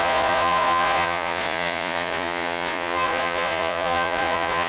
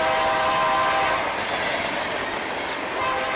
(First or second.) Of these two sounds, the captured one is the second